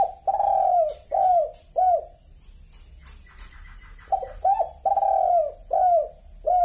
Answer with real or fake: real